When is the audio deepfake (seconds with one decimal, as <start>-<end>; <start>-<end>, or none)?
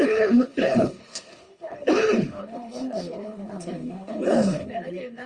0.0-5.3